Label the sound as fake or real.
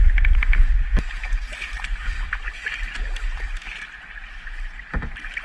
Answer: real